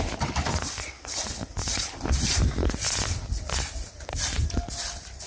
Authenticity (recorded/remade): recorded